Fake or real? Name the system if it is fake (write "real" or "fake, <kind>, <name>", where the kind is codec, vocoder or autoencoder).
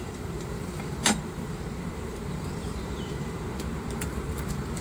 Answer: fake, vocoder, BigVGAN v2